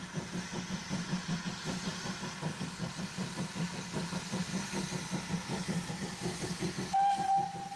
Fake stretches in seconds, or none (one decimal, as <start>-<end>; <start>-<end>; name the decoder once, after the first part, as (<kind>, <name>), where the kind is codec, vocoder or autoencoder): 0.8-1.3 (vocoder, BigVGAN v2); 4.5-5.9